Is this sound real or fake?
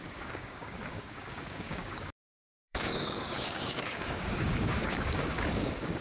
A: fake